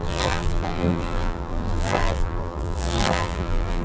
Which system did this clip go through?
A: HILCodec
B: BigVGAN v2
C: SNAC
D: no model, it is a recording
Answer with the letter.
B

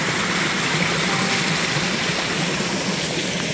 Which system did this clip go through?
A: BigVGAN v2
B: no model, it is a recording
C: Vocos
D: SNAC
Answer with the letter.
B